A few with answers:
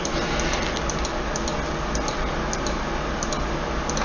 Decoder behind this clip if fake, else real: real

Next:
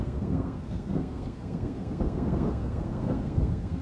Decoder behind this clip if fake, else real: fake, codec, SNAC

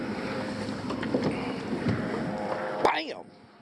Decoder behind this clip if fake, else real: real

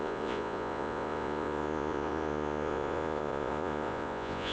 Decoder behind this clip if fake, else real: fake, vocoder, Vocos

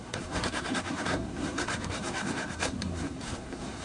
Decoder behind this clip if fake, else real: fake, codec, SNAC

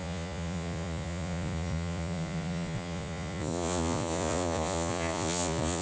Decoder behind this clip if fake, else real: fake, vocoder, Vocos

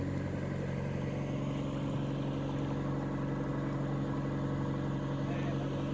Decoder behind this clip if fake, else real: real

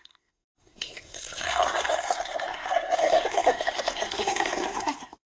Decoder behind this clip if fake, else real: fake, codec, SNAC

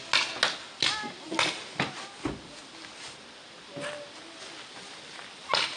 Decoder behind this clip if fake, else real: real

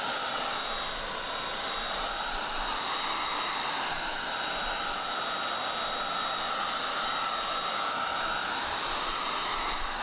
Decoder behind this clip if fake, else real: real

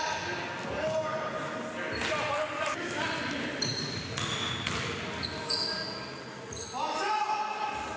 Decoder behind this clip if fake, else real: real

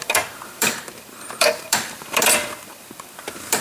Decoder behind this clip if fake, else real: fake, vocoder, BigVGAN v2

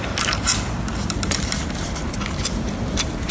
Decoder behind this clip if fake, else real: real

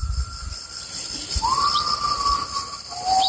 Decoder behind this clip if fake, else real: real